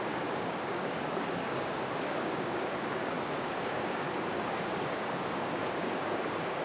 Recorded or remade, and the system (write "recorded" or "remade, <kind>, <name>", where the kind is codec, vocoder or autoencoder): remade, codec, DAC